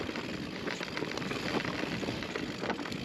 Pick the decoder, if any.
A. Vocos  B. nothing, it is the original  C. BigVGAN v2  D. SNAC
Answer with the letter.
B